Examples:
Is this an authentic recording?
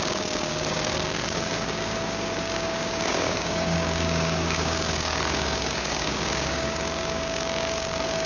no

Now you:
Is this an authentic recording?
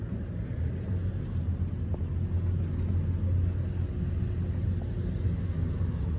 yes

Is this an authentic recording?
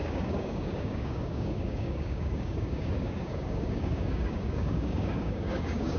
no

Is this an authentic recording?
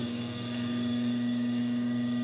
no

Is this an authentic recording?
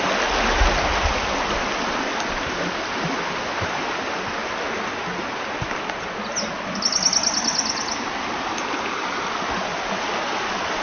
yes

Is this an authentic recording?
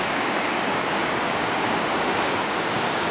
no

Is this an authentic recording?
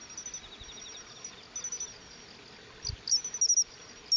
yes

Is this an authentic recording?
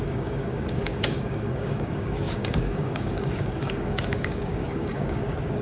no